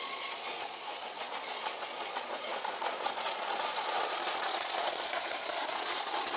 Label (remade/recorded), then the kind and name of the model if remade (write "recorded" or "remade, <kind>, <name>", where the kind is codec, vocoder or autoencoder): remade, vocoder, Vocos